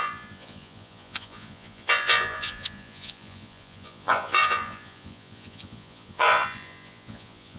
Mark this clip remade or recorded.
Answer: remade